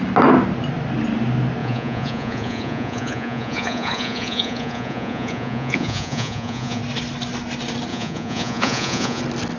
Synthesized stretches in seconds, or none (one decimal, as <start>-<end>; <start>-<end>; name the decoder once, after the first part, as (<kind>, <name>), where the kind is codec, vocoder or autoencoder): 1.6-6.8 (vocoder, Vocos); 7.9-9.2